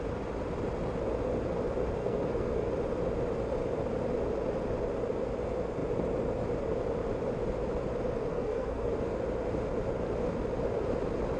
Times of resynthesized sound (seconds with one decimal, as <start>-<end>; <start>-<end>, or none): 2.0-2.7; 8.3-8.9